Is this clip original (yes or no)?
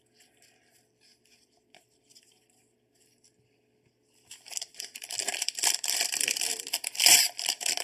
no